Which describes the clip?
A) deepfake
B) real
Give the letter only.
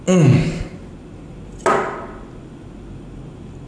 B